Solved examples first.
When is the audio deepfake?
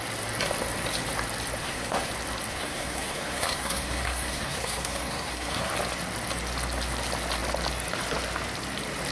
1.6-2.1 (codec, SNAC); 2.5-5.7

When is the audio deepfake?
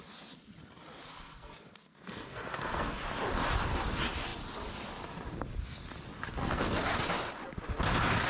1.1-3.0 (codec, SNAC); 6.4-7.0